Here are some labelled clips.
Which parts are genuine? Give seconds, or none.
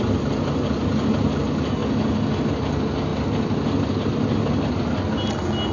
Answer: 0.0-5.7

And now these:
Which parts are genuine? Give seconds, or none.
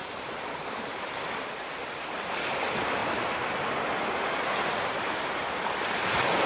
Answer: 3.0-5.4